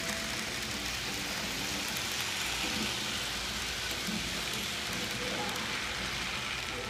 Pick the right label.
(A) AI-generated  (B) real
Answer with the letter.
B